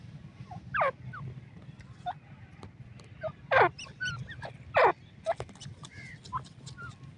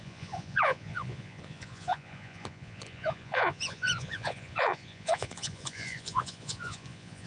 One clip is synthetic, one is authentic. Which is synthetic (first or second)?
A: second